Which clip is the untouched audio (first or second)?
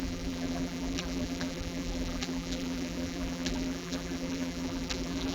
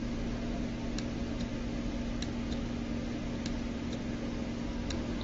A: second